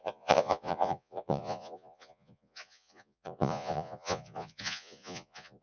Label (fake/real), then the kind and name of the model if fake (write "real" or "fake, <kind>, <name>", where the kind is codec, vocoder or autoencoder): fake, vocoder, Vocos